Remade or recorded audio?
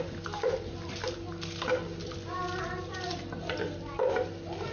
recorded